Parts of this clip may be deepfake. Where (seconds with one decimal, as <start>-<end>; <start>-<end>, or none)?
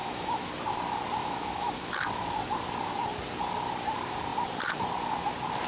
0.0-0.5; 1.2-1.9